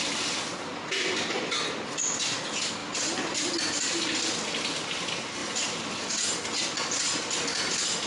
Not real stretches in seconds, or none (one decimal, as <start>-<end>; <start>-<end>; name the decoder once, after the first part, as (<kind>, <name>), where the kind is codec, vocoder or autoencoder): 0.7-2.0 (vocoder, BigVGAN v2); 5.4-6.1